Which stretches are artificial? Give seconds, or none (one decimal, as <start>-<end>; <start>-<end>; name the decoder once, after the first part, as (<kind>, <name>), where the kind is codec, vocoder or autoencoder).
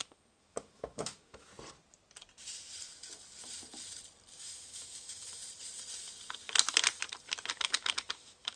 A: 0.0-1.5 (autoencoder, DAC-VAE); 4.4-5.4; 7.5-8.6